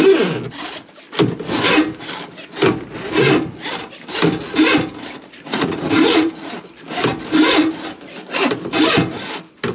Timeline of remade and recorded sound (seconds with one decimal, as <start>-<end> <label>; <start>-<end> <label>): 0.0-5.5 recorded; 5.5-6.3 remade; 6.3-9.7 recorded